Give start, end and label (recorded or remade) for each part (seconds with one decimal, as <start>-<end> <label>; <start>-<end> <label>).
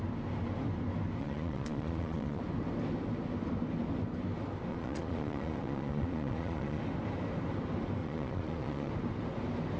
0.0-1.2 recorded; 1.2-2.4 remade; 2.4-4.7 recorded; 4.7-6.8 remade; 6.8-8.0 recorded; 8.0-8.9 remade; 8.9-9.8 recorded